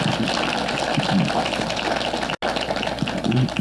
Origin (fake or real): real